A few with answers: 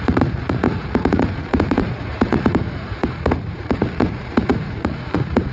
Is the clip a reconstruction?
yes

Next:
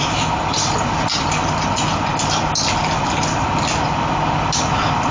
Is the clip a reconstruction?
no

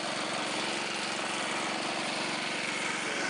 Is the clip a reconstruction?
no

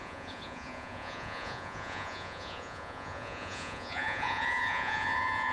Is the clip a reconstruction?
yes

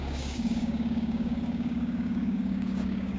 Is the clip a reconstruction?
yes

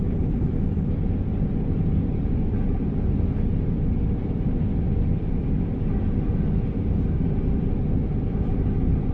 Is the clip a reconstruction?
yes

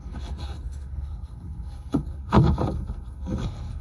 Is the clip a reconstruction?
yes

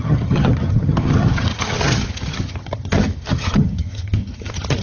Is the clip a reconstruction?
yes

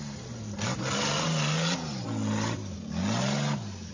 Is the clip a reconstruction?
no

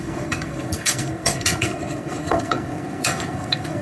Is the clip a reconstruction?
yes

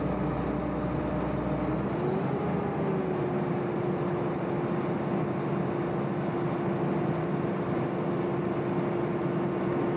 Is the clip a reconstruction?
no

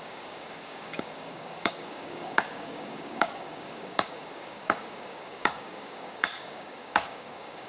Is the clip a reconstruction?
yes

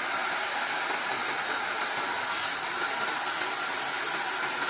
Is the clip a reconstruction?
no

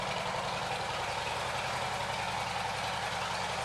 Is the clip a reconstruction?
no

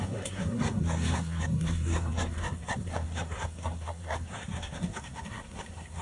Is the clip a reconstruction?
yes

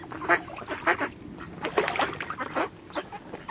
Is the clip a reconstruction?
no